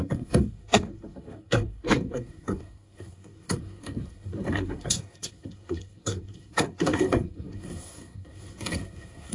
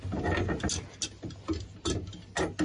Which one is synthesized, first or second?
first